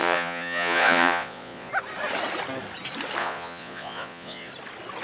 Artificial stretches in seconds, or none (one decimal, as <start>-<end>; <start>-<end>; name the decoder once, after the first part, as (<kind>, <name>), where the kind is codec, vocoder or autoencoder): 0.0-1.7 (vocoder, Vocos); 3.2-4.5